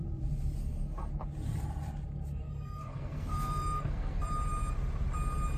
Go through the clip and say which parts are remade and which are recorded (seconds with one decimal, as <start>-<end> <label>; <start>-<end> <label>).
0.0-0.6 recorded; 0.6-1.1 remade; 1.1-2.4 recorded; 2.4-4.3 remade; 4.3-5.6 recorded